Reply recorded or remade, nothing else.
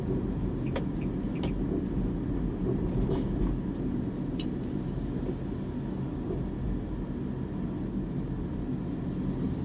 recorded